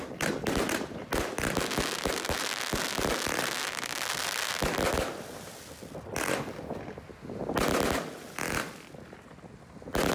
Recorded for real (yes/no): yes